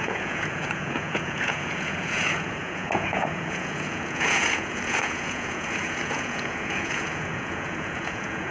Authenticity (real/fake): fake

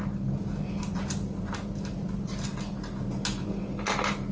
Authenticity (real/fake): real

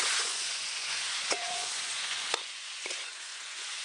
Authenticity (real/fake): fake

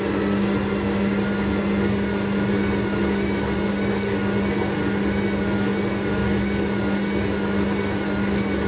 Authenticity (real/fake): real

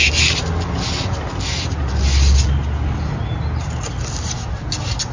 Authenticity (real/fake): real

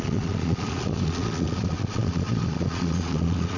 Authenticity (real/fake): fake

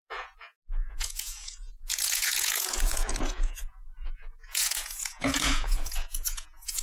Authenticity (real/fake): fake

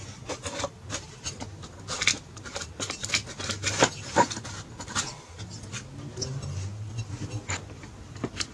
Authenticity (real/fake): real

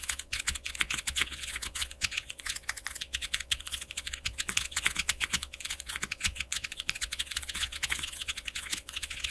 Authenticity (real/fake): fake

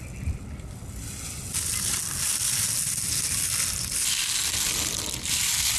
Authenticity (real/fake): real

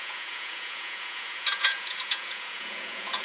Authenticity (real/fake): fake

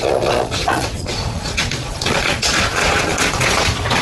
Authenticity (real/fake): fake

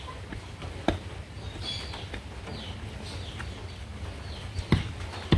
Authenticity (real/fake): real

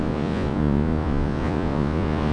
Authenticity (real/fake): fake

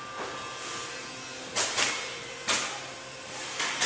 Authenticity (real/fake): real